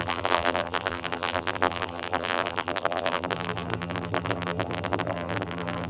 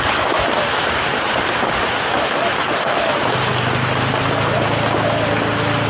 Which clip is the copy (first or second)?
first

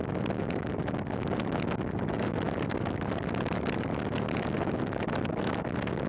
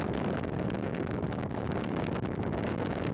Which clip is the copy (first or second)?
second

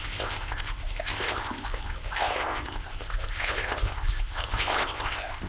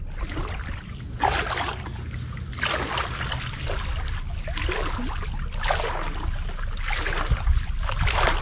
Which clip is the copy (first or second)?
first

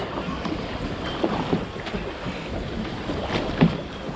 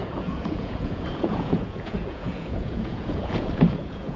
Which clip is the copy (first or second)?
second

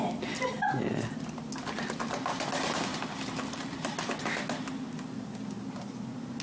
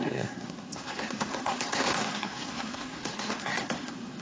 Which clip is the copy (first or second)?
second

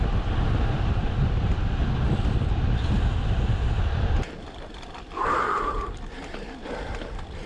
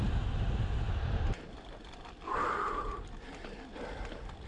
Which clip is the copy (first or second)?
first